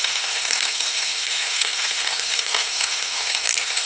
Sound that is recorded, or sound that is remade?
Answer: remade